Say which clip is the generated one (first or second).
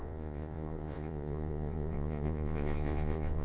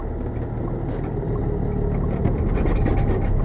first